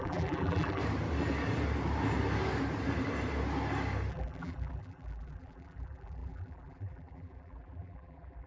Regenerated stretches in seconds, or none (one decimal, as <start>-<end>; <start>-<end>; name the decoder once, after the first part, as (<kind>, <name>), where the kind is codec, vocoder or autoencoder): 0.0-0.8 (vocoder, BigVGAN v2); 4.1-8.5